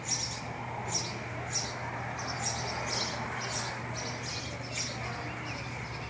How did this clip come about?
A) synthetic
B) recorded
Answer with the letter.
B